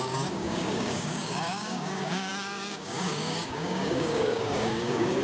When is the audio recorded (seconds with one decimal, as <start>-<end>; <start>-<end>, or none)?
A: none